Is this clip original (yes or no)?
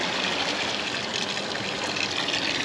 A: yes